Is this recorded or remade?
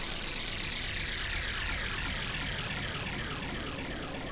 recorded